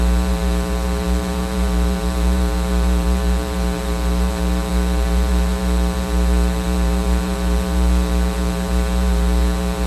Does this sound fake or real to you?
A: fake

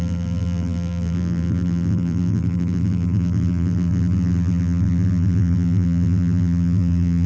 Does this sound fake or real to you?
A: fake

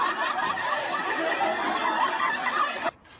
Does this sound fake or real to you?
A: real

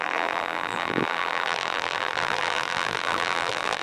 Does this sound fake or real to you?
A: fake